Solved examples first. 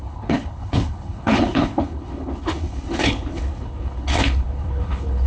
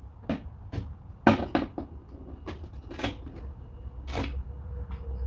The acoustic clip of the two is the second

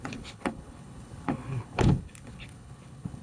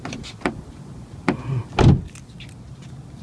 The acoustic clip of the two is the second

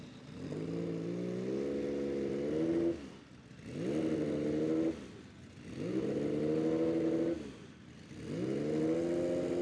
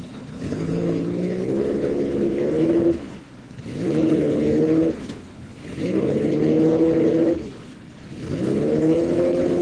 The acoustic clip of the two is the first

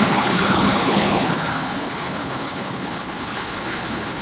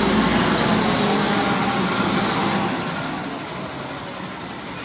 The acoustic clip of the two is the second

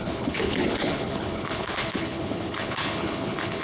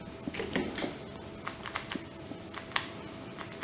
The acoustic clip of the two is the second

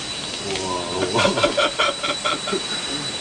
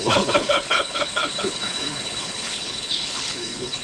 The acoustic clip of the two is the first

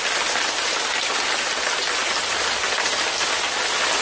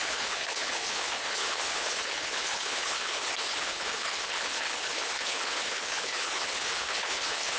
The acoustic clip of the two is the first